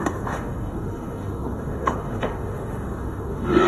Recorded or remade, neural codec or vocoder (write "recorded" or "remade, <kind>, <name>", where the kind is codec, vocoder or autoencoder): remade, autoencoder, DAC-VAE